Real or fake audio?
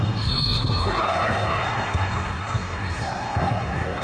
fake